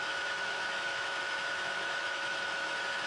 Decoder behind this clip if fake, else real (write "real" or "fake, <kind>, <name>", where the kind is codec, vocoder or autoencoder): fake, autoencoder, DAC-VAE